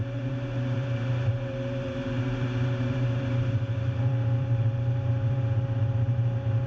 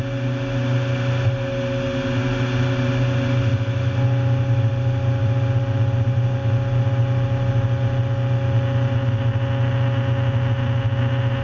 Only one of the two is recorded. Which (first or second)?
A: second